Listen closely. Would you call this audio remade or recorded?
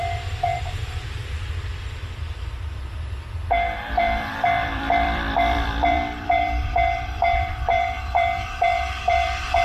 remade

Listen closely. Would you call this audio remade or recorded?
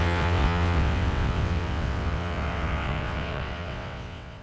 remade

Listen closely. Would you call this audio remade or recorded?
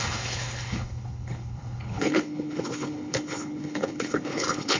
remade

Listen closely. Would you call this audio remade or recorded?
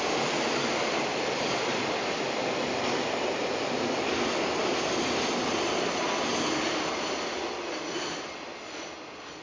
recorded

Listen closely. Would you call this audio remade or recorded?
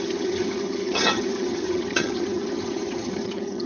remade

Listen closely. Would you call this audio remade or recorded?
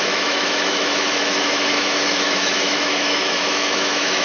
remade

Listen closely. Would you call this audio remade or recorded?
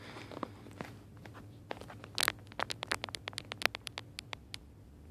recorded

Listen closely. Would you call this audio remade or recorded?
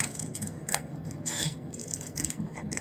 remade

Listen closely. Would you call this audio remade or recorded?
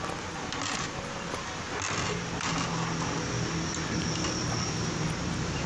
recorded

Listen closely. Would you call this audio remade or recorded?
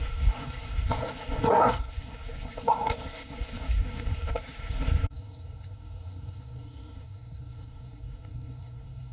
remade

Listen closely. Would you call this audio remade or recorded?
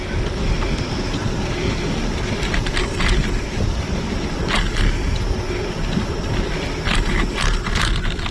recorded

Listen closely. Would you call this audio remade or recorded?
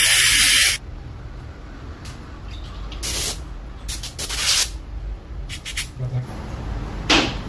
recorded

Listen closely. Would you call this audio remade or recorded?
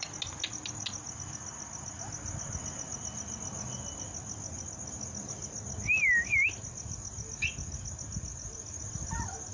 recorded